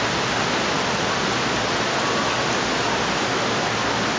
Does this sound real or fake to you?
real